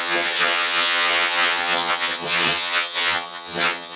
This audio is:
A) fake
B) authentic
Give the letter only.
A